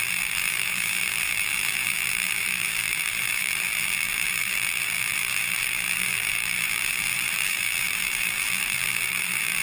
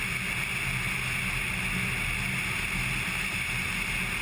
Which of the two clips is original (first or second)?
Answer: second